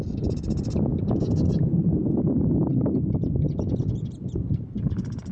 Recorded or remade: recorded